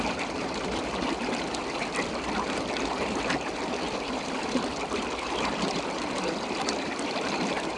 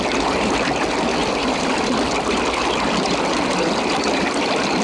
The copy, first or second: first